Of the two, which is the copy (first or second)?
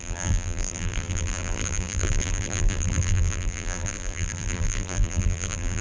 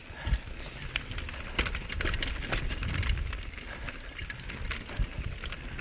first